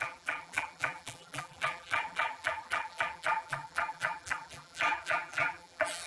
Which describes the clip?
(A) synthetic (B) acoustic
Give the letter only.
A